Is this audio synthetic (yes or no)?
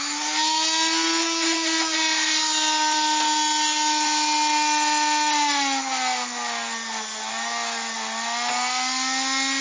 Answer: no